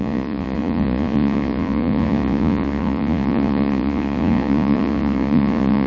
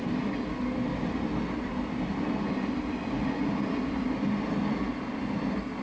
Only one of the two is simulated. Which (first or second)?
first